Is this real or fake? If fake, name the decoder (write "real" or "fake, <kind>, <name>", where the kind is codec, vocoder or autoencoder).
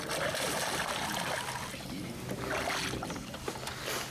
real